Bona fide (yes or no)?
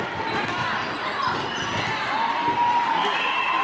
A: yes